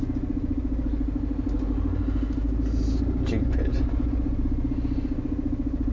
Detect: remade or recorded recorded